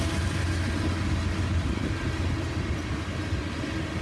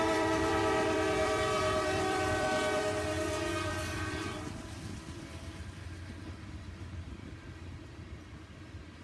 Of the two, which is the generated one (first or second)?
second